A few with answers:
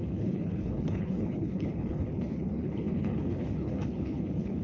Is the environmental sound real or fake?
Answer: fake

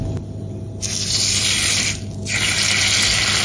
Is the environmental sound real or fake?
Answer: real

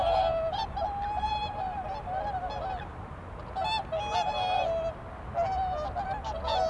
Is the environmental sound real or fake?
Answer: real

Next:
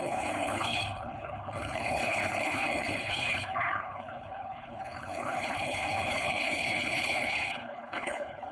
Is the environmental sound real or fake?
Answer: fake